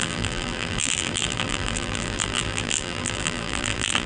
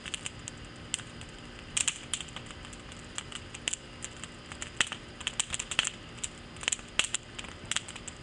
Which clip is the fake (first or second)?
first